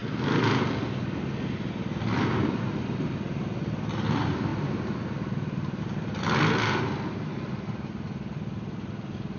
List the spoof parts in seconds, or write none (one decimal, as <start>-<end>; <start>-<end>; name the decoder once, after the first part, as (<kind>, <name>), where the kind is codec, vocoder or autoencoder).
none